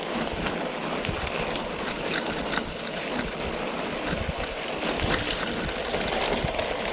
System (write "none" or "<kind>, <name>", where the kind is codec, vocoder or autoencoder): none